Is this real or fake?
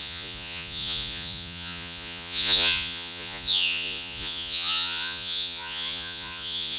fake